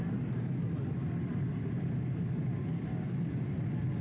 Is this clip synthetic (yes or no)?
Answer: no